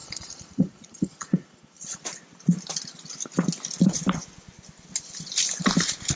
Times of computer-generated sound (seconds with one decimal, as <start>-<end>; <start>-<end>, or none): 0.0-2.0